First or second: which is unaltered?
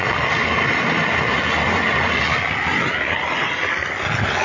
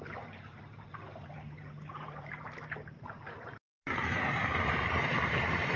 first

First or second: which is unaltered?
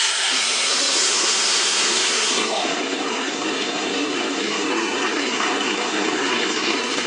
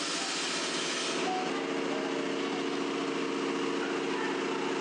second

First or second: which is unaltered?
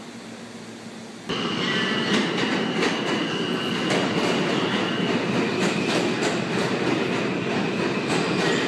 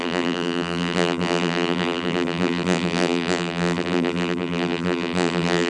first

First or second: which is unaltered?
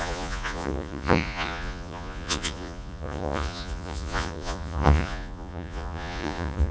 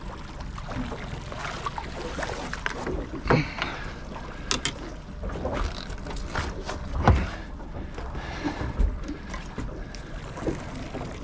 second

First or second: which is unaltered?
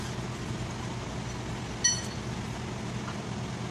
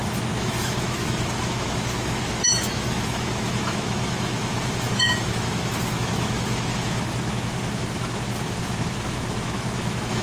first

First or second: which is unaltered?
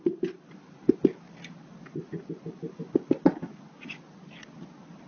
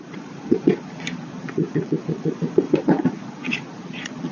first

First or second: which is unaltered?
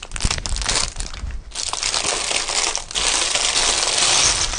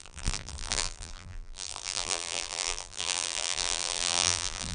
first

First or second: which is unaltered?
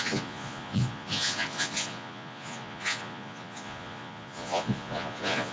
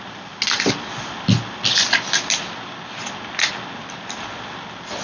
second